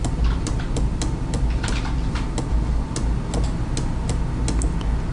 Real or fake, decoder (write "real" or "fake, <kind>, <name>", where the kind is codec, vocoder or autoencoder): real